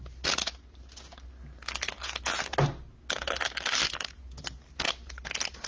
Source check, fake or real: real